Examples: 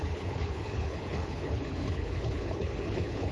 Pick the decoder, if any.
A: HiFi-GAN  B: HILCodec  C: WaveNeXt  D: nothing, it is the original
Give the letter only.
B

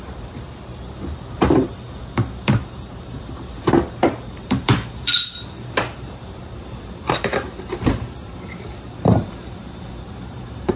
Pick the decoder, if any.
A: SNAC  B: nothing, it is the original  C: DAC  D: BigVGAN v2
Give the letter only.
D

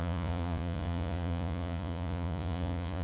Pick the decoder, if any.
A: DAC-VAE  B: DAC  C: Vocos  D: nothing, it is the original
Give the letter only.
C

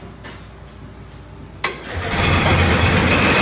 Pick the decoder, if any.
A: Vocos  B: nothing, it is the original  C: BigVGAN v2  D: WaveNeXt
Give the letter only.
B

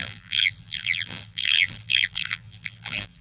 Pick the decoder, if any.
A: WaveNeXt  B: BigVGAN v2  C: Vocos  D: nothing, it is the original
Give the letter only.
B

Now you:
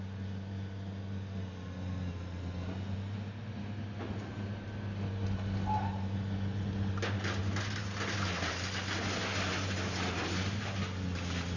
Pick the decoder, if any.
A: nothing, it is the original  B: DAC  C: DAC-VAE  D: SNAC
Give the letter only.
A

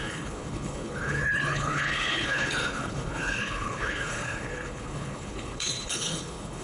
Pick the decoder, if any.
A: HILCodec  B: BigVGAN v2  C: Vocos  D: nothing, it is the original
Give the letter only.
A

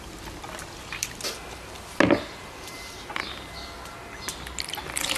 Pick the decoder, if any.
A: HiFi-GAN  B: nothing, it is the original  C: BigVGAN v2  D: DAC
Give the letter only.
B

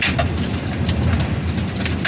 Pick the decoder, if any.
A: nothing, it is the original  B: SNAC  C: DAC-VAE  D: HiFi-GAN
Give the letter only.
A